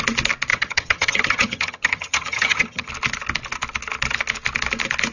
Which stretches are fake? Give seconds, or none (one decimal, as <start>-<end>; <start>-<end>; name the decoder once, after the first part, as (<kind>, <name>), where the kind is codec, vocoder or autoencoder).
0.5-2.9 (vocoder, HiFi-GAN)